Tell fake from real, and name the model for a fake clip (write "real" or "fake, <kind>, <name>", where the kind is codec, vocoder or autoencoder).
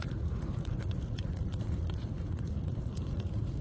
fake, vocoder, Vocos